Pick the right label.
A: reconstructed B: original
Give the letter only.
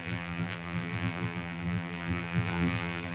A